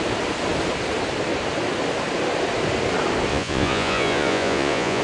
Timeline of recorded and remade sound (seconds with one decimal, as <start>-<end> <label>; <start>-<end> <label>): 0.0-3.3 recorded; 3.3-5.0 remade